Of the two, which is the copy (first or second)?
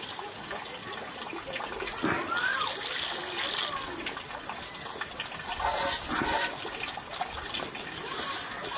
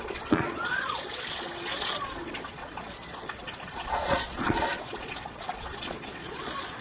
second